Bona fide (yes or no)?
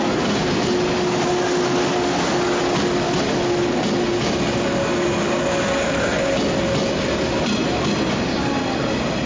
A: yes